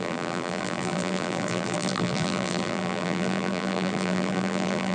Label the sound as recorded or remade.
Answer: remade